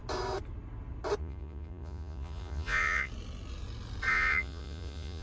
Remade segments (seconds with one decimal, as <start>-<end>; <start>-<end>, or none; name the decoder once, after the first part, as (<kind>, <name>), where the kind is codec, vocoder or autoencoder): 1.2-3.1 (vocoder, Vocos); 4.1-5.2